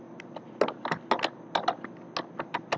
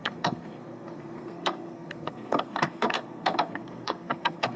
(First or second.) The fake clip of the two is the second